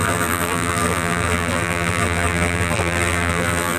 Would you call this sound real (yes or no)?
no